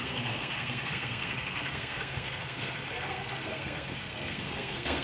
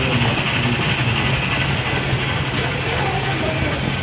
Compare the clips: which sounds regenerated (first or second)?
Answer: first